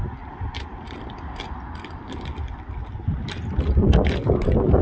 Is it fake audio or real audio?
real